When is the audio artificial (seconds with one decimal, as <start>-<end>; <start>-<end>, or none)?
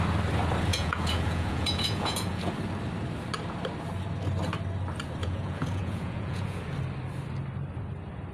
0.7-2.5; 5.2-6.6